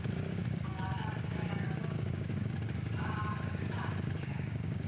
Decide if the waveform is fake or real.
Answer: fake